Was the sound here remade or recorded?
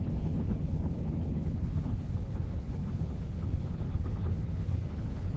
remade